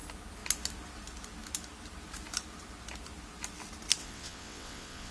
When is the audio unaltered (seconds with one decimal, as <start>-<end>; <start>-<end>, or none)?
0.0-4.0